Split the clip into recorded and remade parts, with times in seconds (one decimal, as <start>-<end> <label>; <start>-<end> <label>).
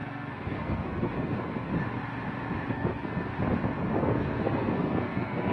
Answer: 0.0-1.7 remade; 1.7-2.7 recorded; 2.7-3.3 remade; 3.3-4.0 recorded; 4.0-5.5 remade